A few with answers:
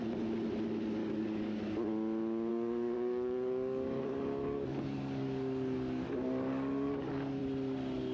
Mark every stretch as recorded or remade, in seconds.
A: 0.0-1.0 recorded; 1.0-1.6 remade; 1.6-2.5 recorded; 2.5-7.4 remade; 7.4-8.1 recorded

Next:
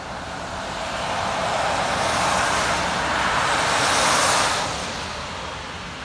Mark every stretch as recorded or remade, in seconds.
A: 0.0-6.0 recorded